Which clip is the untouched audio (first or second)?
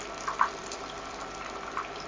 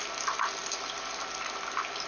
second